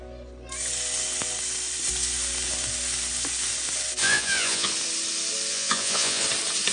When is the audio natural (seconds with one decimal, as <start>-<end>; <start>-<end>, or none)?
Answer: 0.0-4.0; 4.7-5.5; 6.2-6.7